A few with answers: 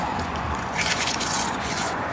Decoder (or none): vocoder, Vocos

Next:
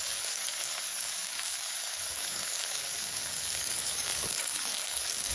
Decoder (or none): codec, DAC